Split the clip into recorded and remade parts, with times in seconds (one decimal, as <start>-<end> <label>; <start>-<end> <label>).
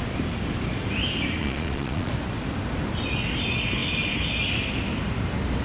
0.0-1.4 recorded; 1.4-2.1 remade; 2.1-5.6 recorded